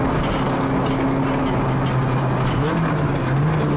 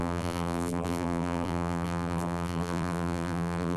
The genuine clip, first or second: first